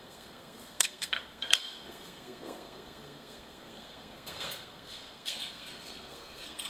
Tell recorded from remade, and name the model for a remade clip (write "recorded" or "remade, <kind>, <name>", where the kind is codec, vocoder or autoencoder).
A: remade, codec, SNAC